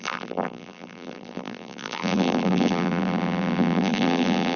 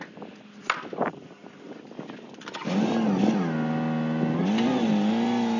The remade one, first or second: first